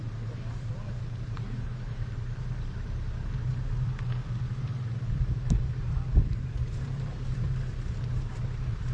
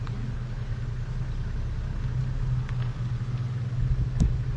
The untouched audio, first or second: second